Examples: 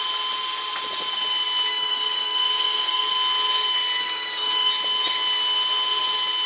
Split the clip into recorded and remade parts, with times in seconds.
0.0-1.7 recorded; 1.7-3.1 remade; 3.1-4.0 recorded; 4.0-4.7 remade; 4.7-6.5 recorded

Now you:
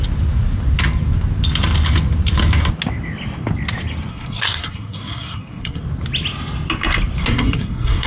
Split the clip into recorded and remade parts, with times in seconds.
0.0-4.1 recorded; 4.1-5.8 remade; 5.8-7.2 recorded; 7.2-8.1 remade

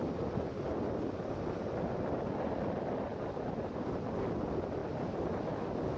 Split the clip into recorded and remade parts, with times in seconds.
0.0-6.0 recorded

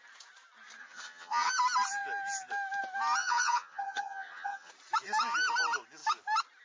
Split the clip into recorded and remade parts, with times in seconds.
0.0-0.8 recorded; 0.8-1.5 remade; 1.5-3.2 recorded; 3.2-4.7 remade; 4.7-6.6 recorded

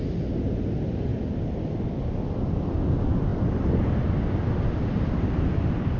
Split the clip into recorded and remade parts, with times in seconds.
0.0-6.0 recorded

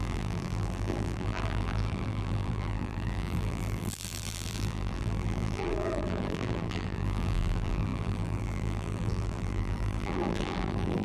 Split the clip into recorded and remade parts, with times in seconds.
0.0-11.0 remade